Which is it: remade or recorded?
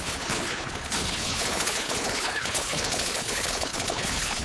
remade